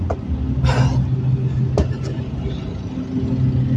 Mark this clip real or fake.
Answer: real